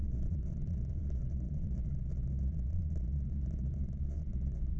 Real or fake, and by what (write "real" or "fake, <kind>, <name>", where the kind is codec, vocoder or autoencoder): fake, vocoder, Vocos